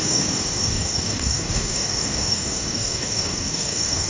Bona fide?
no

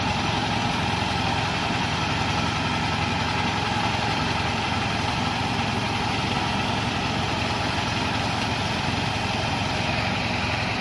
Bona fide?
yes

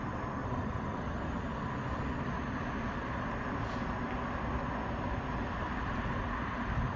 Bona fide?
yes